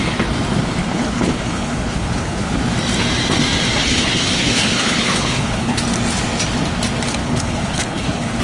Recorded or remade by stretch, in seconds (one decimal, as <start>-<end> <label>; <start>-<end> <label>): 0.0-0.8 recorded; 0.8-2.6 remade; 2.6-3.8 recorded; 3.8-5.8 remade; 5.8-7.2 recorded; 7.2-8.4 remade